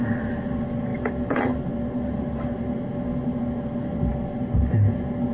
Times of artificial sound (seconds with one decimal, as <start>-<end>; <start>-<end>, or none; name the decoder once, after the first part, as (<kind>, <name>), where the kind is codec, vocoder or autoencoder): none